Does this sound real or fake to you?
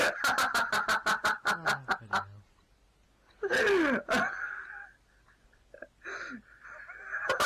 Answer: real